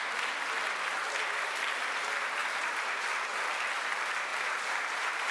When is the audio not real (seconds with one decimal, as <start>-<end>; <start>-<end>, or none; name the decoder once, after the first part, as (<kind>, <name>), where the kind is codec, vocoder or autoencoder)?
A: 2.4-3.1 (vocoder, BigVGAN v2); 4.3-5.3